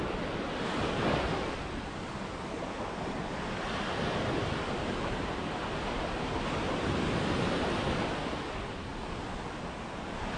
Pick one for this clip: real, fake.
real